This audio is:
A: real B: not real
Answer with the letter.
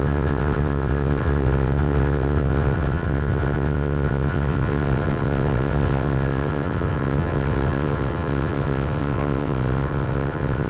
B